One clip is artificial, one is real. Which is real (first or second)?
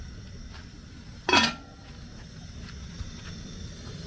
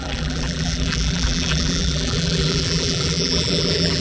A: first